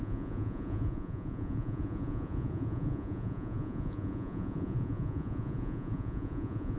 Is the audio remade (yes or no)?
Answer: yes